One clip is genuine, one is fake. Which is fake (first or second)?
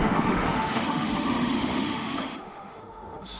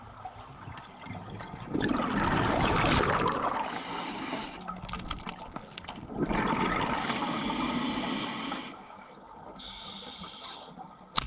first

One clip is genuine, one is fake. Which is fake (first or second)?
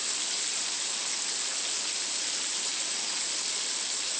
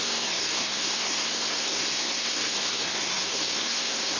second